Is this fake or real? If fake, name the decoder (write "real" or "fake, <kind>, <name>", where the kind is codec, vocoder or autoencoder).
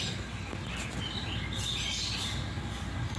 real